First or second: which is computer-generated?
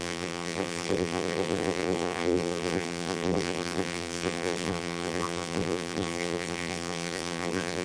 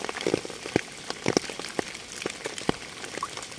first